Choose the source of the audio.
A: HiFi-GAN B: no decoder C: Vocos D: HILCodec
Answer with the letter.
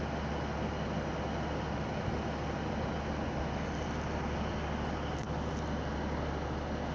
B